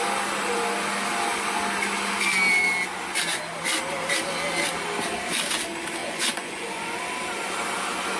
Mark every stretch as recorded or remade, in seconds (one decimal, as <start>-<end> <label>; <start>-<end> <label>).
0.0-6.0 recorded; 6.0-7.0 remade; 7.0-8.2 recorded